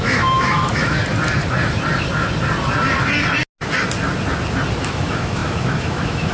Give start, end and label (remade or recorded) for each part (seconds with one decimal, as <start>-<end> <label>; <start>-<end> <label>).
0.0-1.0 remade; 1.0-4.8 recorded; 4.8-6.3 remade